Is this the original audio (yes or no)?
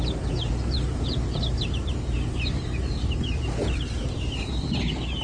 no